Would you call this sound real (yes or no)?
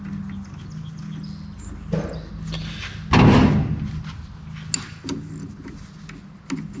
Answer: yes